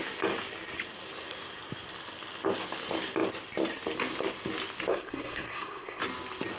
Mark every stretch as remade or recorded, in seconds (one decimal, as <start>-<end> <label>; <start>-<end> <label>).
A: 0.0-4.9 recorded; 4.9-6.0 remade; 6.0-6.6 recorded